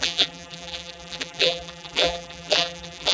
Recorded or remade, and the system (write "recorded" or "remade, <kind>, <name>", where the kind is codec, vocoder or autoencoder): remade, vocoder, BigVGAN v2